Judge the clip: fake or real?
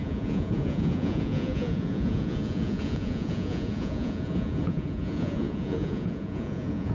fake